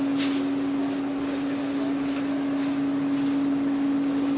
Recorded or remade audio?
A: recorded